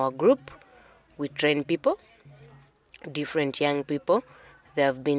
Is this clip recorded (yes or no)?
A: yes